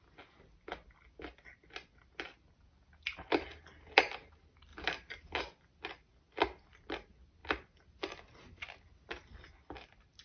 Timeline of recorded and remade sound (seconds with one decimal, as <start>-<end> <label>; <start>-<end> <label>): 0.0-10.2 recorded